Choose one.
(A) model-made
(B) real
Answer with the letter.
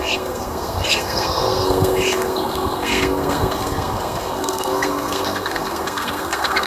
A